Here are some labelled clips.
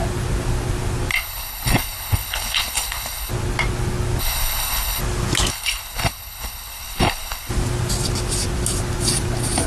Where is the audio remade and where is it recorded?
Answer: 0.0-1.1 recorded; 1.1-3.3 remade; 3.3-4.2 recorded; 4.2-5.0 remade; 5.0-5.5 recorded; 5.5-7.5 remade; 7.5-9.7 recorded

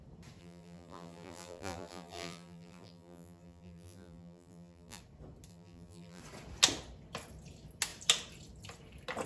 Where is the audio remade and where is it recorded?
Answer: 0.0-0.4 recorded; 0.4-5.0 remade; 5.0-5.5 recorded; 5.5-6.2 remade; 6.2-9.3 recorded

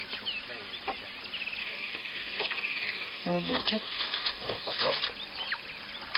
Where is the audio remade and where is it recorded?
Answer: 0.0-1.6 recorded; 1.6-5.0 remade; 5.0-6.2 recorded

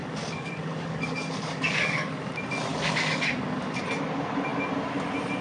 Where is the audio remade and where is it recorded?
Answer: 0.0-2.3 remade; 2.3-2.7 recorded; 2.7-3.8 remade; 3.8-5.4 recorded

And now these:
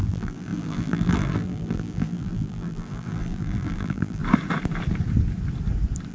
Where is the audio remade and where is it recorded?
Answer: 0.0-4.2 remade; 4.2-6.1 recorded

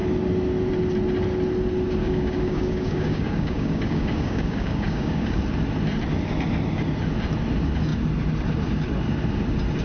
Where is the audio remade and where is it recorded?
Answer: 0.0-2.0 recorded; 2.0-5.4 remade; 5.4-9.8 recorded